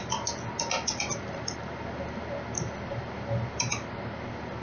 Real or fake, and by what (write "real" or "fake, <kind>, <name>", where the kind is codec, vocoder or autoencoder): real